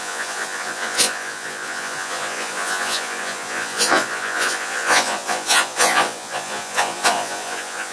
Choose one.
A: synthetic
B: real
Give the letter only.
A